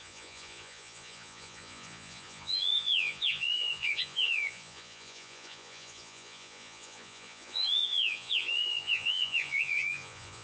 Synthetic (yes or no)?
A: yes